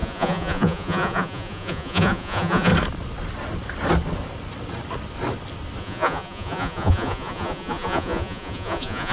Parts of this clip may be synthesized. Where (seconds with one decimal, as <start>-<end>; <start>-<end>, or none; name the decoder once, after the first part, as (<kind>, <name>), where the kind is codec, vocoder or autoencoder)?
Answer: 0.0-2.7 (vocoder, Vocos); 5.8-9.1